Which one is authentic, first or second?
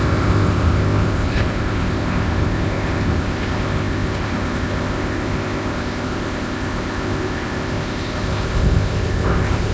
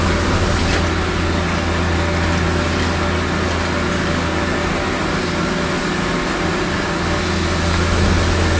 second